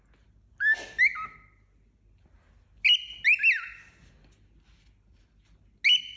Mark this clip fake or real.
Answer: real